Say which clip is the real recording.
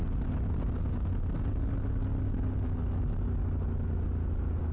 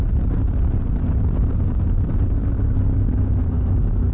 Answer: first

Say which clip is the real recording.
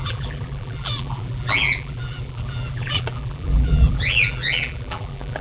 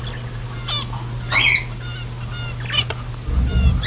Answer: second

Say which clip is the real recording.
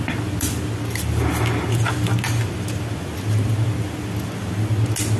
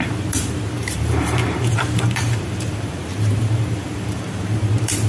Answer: first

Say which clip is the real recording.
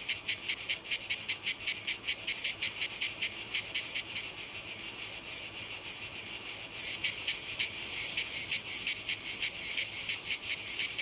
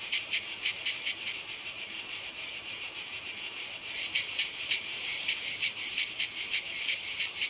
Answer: first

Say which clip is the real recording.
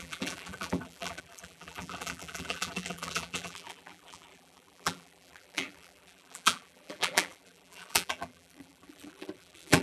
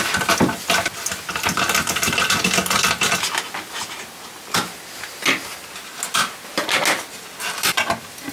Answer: second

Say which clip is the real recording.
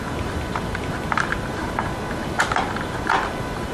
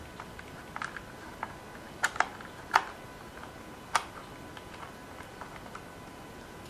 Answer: second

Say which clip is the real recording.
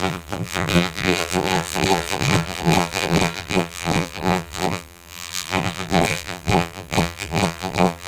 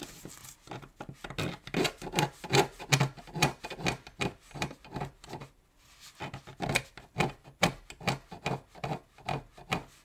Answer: second